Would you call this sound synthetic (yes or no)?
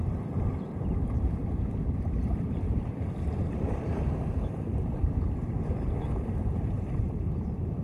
yes